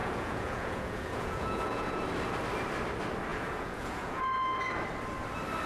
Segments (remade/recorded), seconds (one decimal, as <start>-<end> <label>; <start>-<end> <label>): 0.0-2.0 remade; 2.0-3.3 recorded; 3.3-4.2 remade; 4.2-5.7 recorded